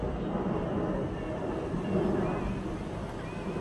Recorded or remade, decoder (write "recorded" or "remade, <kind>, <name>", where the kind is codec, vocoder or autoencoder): recorded